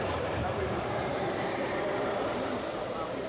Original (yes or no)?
no